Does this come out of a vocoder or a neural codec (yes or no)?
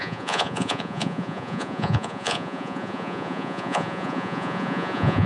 yes